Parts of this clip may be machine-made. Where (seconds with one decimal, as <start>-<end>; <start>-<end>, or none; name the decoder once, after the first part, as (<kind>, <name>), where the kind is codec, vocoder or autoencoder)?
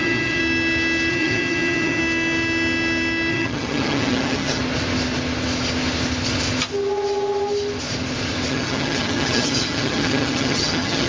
0.0-0.4 (vocoder, HiFi-GAN); 1.1-2.0; 3.3-4.6; 8.5-11.1